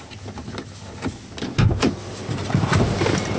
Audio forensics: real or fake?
real